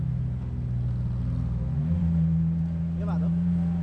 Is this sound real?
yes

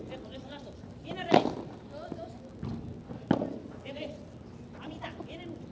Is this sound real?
yes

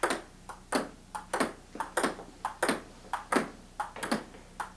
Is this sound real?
yes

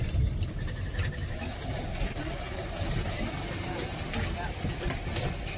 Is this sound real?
yes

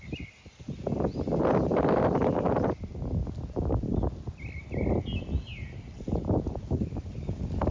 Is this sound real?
yes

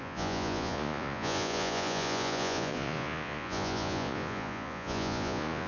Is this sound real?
no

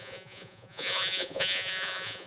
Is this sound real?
no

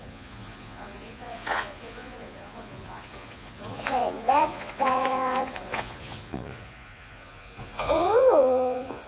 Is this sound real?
no